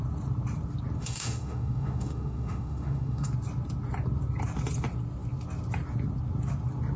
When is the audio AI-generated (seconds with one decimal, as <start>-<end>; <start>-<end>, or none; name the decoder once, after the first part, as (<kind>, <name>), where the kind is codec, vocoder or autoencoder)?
1.0-3.3 (autoencoder, DAC-VAE)